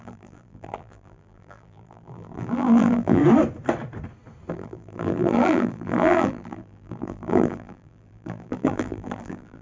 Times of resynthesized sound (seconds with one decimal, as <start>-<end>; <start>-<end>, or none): 0.0-3.2; 4.5-9.6